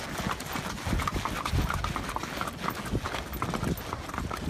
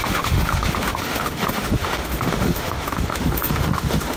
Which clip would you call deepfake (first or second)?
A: second